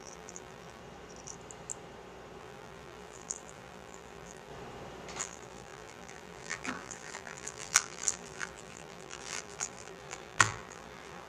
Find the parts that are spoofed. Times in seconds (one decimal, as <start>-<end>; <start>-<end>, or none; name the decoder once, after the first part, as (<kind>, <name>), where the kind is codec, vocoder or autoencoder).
0.0-0.8 (vocoder, BigVGAN v2); 2.4-4.5; 5.2-11.3